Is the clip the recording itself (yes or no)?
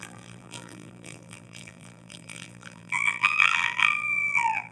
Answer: no